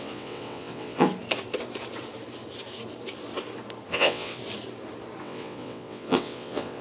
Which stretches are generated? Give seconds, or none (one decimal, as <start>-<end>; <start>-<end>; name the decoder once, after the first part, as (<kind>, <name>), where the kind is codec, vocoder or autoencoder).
0.0-1.1 (vocoder, WaveNeXt); 3.9-4.4; 5.2-6.8